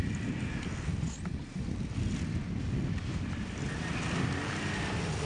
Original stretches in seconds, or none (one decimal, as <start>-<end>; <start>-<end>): 0.0-5.3